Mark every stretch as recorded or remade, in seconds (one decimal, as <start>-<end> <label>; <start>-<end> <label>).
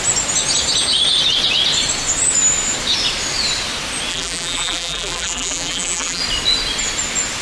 0.0-4.1 recorded; 4.1-6.2 remade; 6.2-7.4 recorded